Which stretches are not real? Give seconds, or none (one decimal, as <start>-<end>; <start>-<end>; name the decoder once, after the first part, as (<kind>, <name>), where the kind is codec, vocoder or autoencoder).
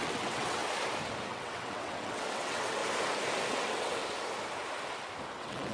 0.0-0.6 (vocoder, WaveNeXt); 1.3-2.8; 3.5-4.0; 5.3-5.7